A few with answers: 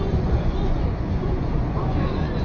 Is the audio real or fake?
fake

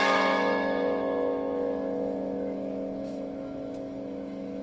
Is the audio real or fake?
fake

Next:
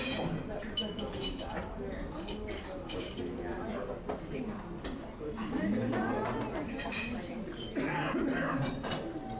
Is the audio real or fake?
real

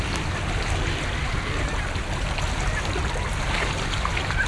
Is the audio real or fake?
real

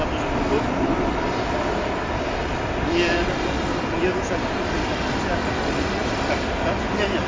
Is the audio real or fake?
real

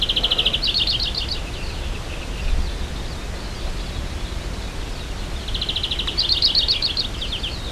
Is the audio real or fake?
real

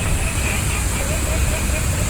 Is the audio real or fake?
real